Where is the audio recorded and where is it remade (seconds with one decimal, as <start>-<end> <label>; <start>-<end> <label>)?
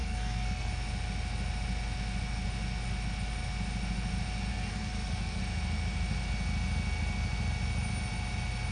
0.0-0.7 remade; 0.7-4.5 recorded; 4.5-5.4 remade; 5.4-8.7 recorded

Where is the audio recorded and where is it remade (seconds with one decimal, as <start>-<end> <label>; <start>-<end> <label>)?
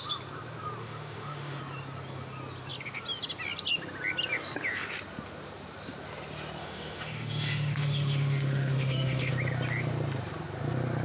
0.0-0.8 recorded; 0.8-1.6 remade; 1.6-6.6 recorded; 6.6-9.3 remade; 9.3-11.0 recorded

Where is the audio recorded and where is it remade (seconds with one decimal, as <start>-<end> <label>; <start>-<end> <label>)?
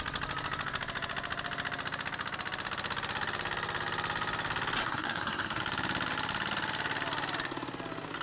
0.0-4.8 recorded; 4.8-5.6 remade; 5.6-8.2 recorded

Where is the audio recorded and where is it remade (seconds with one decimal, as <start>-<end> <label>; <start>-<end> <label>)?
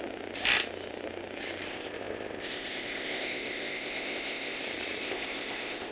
0.0-1.7 recorded; 1.7-4.6 remade; 4.6-5.0 recorded; 5.0-5.9 remade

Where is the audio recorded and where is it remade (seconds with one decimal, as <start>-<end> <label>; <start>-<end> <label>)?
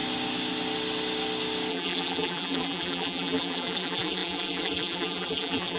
0.0-1.7 recorded; 1.7-5.8 remade